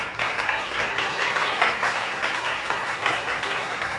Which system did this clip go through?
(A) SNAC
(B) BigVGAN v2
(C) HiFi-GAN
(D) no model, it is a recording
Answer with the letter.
A